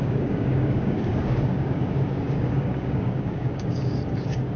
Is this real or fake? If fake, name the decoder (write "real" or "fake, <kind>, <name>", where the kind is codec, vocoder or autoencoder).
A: fake, codec, DAC